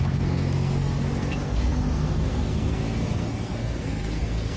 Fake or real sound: fake